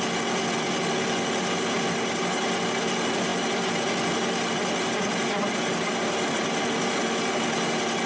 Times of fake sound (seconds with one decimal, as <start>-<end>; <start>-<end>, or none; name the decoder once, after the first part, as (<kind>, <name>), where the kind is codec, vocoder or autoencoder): none